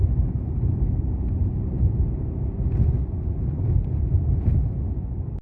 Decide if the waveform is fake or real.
real